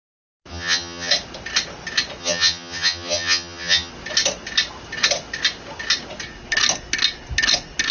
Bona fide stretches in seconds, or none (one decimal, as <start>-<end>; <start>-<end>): 0.0-0.5; 1.1-2.2; 3.9-7.9